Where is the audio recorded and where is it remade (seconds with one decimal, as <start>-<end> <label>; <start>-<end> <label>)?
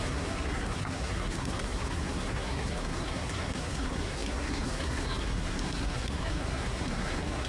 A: 0.0-7.5 remade